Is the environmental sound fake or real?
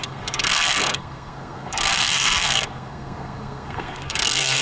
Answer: fake